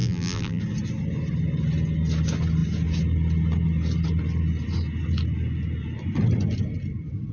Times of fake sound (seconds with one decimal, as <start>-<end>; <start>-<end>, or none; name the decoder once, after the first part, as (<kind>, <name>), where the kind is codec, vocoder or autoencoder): 0.0-0.6 (vocoder, BigVGAN v2)